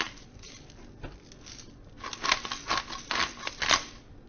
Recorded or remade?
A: recorded